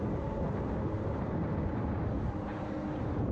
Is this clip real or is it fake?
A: real